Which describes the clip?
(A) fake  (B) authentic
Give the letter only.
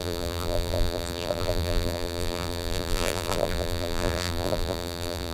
A